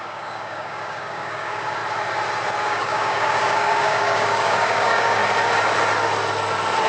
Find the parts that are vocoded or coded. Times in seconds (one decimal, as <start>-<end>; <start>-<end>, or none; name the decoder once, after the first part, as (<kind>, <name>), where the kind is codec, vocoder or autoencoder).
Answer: 0.0-1.8 (codec, DAC); 2.6-5.2